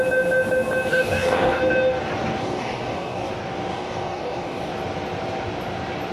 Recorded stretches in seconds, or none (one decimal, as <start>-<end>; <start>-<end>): 0.0-0.9; 1.6-2.4; 3.3-3.7; 4.7-6.1